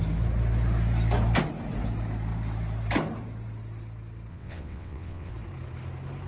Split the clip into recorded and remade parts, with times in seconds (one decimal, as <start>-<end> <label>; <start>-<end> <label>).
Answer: 0.0-4.3 recorded; 4.3-5.3 remade; 5.3-6.3 recorded

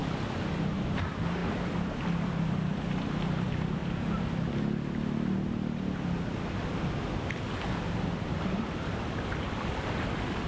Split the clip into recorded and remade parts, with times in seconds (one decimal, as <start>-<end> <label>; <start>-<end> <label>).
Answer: 0.0-0.5 recorded; 0.5-1.4 remade; 1.4-2.3 recorded; 2.3-3.8 remade; 3.8-8.4 recorded; 8.4-10.5 remade

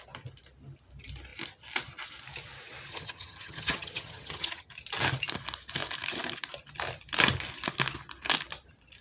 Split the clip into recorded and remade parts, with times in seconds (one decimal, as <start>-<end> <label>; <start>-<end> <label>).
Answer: 0.0-2.9 recorded; 2.9-4.7 remade; 4.7-9.0 recorded

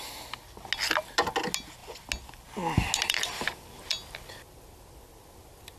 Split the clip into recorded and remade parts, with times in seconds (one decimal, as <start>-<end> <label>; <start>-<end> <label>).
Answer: 0.0-5.8 recorded